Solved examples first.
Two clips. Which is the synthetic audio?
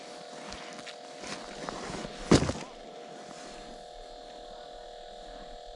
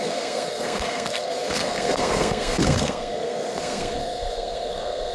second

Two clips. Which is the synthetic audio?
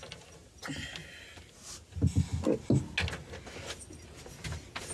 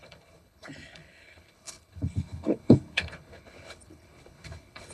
second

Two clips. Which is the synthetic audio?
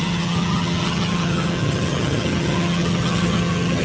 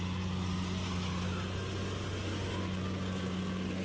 first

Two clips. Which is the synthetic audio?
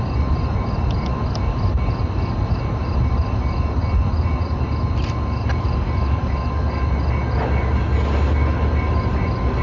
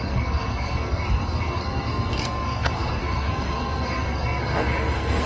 second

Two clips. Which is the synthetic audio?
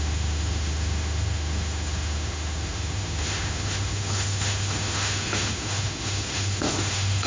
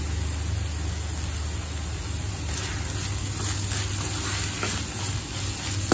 first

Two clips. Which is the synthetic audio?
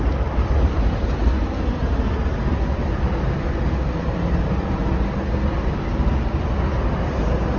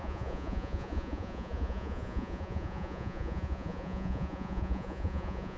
second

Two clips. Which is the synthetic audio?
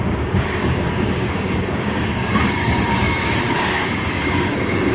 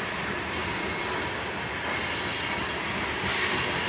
first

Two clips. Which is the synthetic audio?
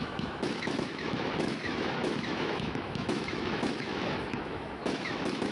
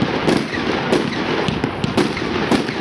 first